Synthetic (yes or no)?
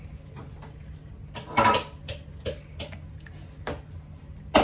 no